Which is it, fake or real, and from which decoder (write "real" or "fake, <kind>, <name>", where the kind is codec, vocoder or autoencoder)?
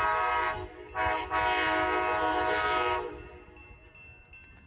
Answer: real